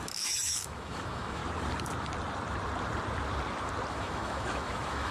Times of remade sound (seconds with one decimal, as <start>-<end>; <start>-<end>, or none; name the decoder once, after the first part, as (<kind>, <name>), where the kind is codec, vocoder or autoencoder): 0.0-1.4 (autoencoder, DAC-VAE); 3.9-5.1